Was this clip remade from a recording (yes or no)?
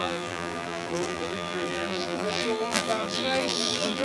yes